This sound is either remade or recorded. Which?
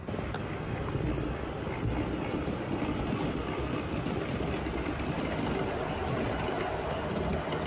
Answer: recorded